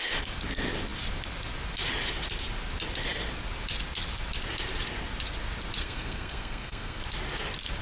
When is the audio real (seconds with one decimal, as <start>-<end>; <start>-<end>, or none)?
0.0-5.8; 7.0-7.8